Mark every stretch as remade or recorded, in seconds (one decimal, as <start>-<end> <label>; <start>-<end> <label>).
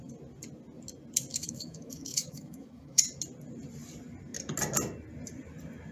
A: 0.0-1.3 recorded; 1.3-3.0 remade; 3.0-5.9 recorded